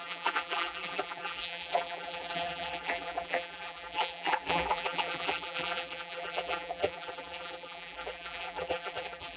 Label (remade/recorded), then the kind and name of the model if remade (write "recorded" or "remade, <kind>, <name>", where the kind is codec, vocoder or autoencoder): remade, vocoder, BigVGAN v2